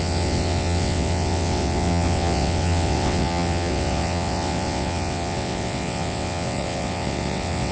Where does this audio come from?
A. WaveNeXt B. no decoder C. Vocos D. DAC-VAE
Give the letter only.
A